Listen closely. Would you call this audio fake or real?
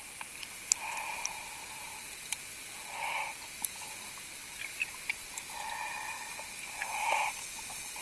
real